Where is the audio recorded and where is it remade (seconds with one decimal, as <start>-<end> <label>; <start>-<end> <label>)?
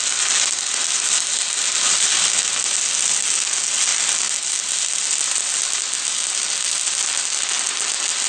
0.0-8.3 recorded